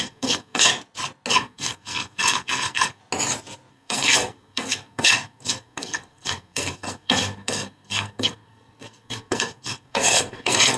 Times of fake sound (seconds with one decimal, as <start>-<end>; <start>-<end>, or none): 0.0-0.7; 1.3-3.0; 3.7-10.8